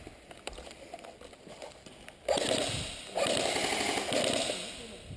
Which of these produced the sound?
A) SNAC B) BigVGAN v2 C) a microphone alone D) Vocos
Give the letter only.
C